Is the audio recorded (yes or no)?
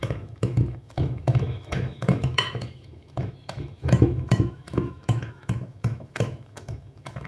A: no